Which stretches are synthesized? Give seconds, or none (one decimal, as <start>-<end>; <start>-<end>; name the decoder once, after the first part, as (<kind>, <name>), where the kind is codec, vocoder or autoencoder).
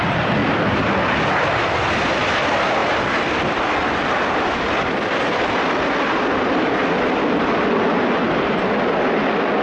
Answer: 6.8-9.6 (vocoder, BigVGAN v2)